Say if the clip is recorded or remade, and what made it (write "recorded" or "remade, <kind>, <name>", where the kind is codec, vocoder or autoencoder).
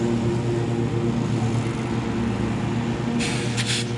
recorded